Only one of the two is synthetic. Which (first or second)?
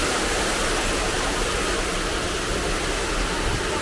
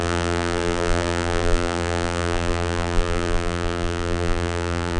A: second